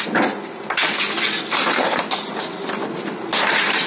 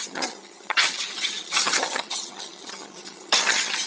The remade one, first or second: second